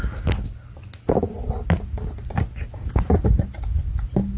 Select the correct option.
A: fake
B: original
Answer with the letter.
B